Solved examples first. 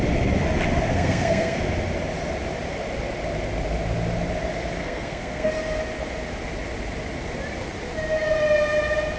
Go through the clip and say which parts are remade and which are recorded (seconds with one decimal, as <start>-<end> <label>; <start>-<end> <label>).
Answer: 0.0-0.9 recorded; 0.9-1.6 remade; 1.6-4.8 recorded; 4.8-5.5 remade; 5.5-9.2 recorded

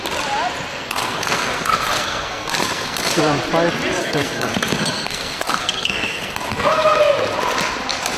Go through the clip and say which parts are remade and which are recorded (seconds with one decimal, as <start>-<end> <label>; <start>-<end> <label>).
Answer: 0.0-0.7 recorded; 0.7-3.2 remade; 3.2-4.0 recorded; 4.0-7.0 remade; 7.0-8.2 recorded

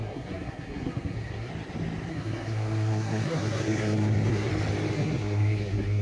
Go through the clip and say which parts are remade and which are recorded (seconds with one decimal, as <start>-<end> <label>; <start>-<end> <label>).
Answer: 0.0-1.5 remade; 1.5-2.1 recorded; 2.1-4.5 remade; 4.5-4.9 recorded; 4.9-6.0 remade

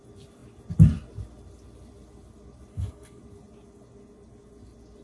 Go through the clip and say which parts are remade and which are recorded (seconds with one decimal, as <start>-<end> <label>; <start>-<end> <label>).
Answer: 0.0-2.7 recorded; 2.7-3.2 remade; 3.2-5.0 recorded